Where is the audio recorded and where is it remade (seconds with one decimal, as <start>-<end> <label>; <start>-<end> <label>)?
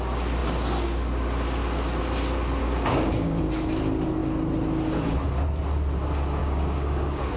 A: 0.0-2.6 recorded; 2.6-3.4 remade; 3.4-6.4 recorded; 6.4-7.4 remade